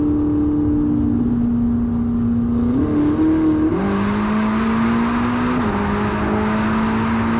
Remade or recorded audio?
recorded